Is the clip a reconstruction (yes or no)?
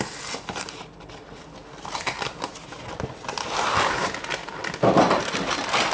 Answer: no